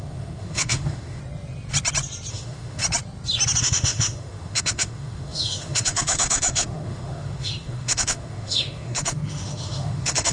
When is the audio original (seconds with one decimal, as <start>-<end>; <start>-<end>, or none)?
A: 1.2-2.3; 2.8-3.6